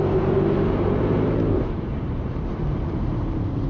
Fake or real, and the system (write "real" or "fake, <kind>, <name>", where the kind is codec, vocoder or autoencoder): fake, vocoder, BigVGAN v2